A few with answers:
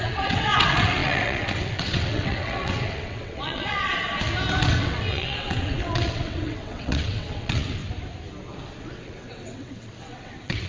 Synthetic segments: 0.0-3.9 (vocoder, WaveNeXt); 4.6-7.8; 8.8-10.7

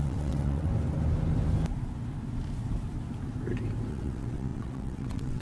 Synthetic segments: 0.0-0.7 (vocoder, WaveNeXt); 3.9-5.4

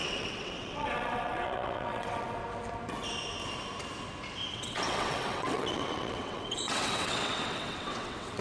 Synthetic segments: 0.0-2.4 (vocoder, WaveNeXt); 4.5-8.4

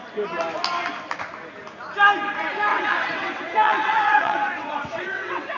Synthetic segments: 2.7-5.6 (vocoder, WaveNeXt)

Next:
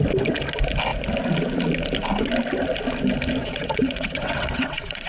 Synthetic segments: 3.4-5.1 (vocoder, WaveNeXt)

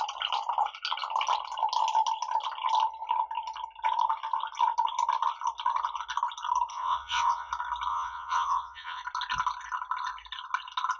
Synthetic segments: 6.7-7.5 (vocoder, WaveNeXt); 7.9-9.0

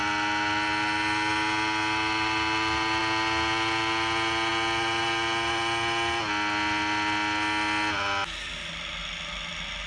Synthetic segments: none